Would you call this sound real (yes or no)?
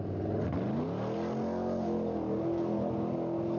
yes